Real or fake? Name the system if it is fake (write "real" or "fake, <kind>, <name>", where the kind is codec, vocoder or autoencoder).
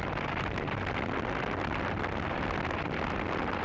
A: real